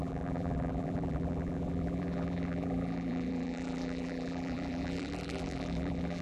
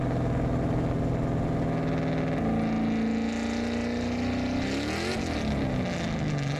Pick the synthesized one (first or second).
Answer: first